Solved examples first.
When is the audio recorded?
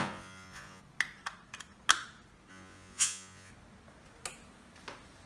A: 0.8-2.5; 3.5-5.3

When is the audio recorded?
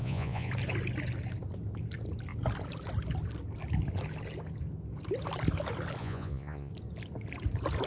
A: 0.5-6.0; 6.7-7.9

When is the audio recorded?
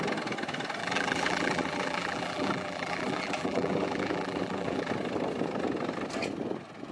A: 0.0-0.8; 4.9-6.9